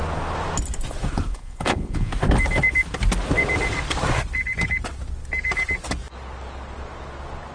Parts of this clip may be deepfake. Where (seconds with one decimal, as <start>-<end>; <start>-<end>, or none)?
1.3-2.1